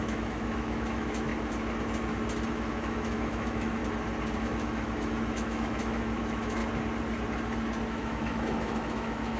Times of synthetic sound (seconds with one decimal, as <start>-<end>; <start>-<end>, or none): 0.0-1.3; 2.5-3.8; 4.4-6.6; 7.9-9.4

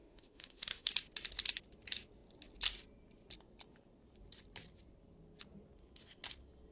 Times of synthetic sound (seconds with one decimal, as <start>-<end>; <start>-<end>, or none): 0.0-0.9

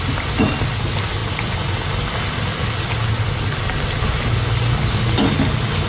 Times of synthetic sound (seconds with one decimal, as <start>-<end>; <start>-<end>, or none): none

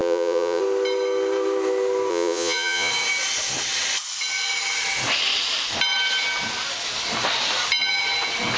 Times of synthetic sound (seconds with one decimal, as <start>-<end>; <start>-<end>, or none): 0.0-0.6; 2.1-2.9

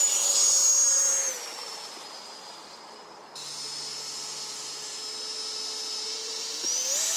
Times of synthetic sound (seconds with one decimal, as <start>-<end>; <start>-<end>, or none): none

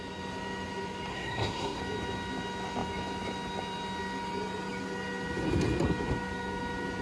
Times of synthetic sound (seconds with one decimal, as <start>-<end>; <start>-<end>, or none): 1.1-1.8

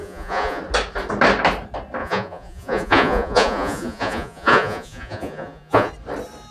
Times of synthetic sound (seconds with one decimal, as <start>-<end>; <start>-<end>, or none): 0.0-0.6; 2.0-5.9

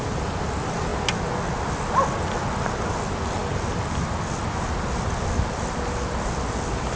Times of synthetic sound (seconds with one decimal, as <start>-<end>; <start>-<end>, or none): none